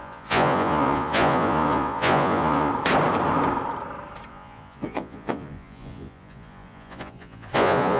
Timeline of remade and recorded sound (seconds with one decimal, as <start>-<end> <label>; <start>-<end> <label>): 0.0-2.7 remade; 2.7-4.3 recorded; 4.3-8.0 remade